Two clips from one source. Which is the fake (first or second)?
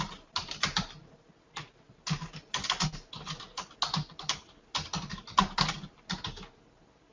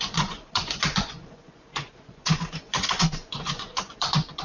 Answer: second